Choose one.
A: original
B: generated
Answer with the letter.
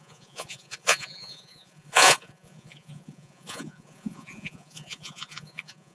B